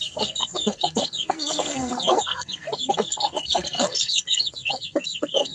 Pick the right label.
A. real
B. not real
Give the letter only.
B